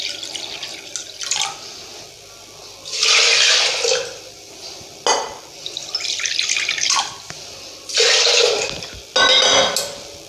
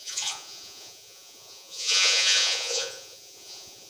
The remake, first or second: second